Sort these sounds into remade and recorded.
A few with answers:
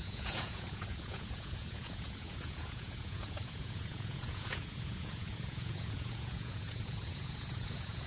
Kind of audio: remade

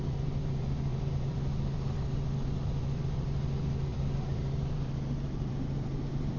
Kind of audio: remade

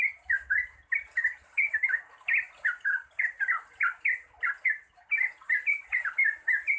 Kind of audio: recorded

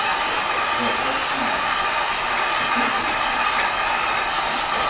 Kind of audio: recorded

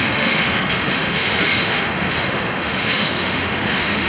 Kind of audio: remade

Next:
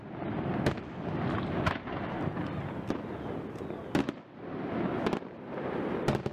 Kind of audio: recorded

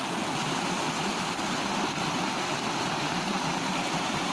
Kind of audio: recorded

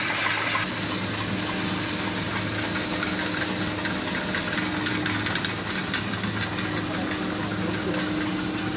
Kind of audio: recorded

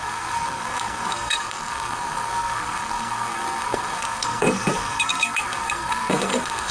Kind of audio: remade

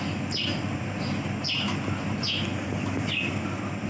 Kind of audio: recorded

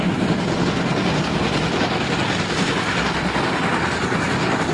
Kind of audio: recorded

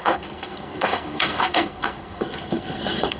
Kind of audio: remade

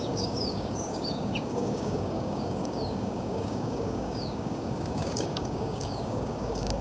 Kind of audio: remade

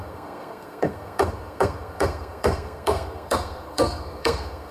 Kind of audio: remade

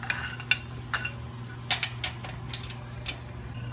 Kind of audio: recorded